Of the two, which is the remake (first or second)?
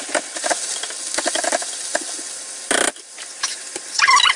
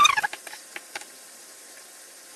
second